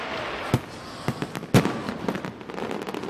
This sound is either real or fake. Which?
real